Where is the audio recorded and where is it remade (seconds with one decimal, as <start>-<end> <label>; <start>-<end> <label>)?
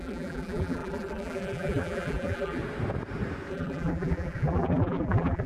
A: 0.0-2.6 remade; 2.6-3.5 recorded; 3.5-5.5 remade